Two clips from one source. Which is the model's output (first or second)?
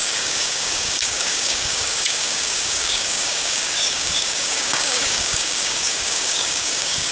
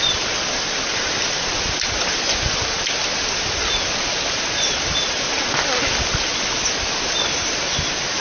first